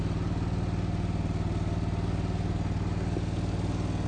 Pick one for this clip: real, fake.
real